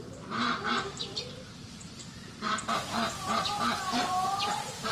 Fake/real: fake